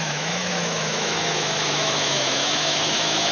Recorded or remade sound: remade